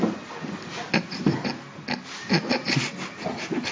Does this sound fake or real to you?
real